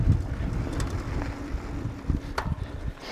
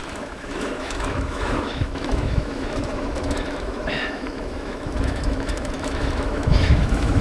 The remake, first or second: second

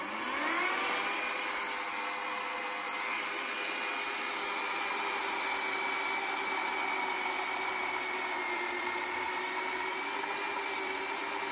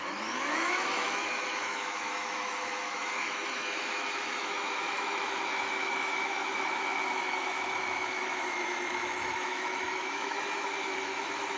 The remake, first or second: second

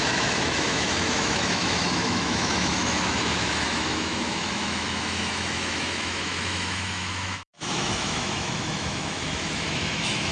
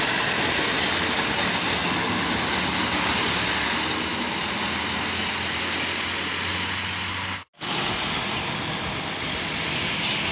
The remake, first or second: first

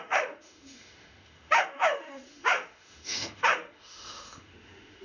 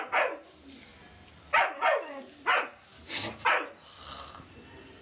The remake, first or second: first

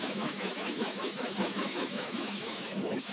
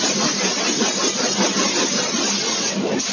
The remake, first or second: first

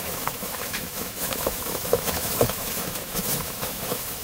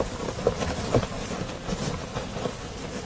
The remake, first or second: first